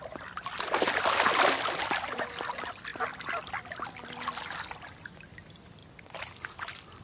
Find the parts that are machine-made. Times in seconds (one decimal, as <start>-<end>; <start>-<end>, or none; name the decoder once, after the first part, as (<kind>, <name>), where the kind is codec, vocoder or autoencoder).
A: none